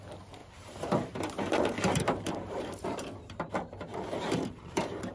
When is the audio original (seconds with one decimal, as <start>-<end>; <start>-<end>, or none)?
0.0-0.4; 3.5-3.9